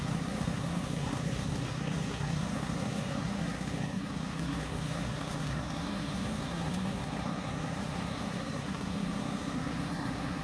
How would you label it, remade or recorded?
remade